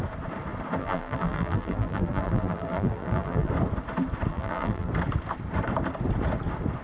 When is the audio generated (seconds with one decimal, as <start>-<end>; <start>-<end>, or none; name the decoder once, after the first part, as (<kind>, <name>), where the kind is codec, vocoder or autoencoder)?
0.8-3.5 (vocoder, BigVGAN v2); 4.3-4.9